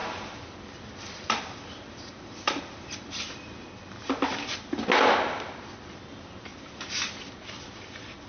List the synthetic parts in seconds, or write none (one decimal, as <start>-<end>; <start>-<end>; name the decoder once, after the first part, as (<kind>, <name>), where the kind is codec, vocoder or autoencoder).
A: 0.0-4.1 (vocoder, BigVGAN v2); 6.5-7.1